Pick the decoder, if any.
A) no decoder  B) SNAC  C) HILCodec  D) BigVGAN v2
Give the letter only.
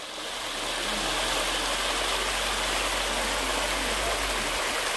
A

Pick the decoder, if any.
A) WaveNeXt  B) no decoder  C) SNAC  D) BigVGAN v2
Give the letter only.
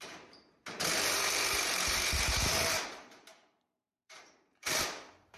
D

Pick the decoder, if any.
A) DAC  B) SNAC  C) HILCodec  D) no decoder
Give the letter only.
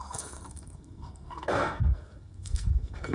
B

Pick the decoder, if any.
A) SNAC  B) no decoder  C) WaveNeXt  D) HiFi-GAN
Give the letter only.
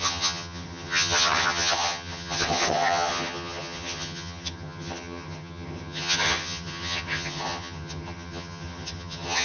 D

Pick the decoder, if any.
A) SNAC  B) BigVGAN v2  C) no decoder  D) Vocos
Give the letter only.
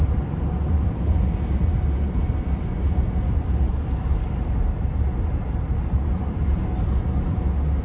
C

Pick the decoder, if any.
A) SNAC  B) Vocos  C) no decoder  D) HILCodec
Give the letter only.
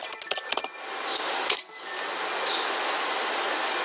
C